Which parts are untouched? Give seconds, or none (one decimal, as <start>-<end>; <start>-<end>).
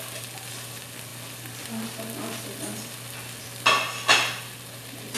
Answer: 0.0-5.2